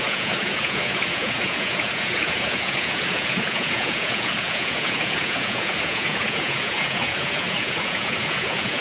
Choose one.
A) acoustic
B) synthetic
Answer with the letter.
B